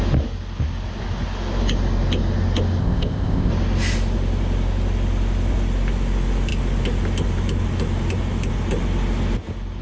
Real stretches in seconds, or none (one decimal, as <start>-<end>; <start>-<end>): 0.0-2.8; 3.5-9.8